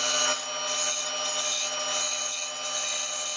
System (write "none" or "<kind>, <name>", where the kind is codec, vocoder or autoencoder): none